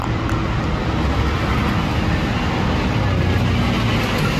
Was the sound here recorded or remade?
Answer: recorded